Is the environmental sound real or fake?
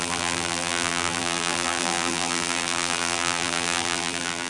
fake